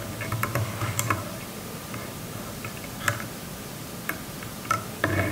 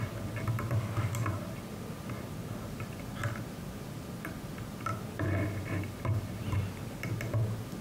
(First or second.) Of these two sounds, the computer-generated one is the first